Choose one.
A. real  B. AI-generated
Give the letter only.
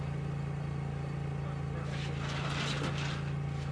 A